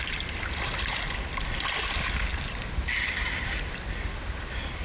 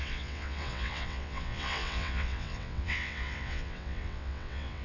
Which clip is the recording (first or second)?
first